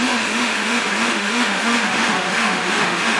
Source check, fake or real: fake